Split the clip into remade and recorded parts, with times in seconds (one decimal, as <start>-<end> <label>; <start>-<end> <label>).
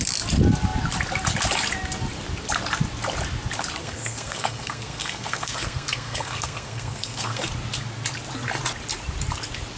0.0-3.8 recorded; 3.8-7.5 remade; 7.5-9.8 recorded